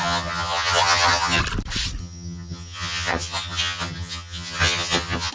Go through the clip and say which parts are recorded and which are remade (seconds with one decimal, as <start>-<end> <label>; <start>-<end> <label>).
0.0-1.4 remade; 1.4-2.0 recorded; 2.0-5.3 remade